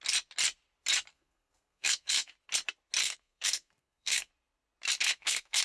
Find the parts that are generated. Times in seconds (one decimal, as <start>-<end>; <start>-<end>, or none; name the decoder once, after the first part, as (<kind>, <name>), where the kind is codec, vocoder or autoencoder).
1.1-2.3 (codec, SNAC); 3.0-4.3; 5.0-5.6